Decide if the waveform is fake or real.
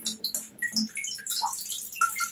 real